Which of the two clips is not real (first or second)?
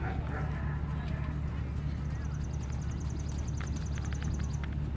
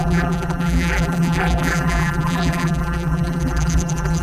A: second